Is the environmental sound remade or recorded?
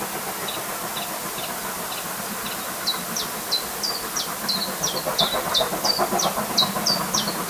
recorded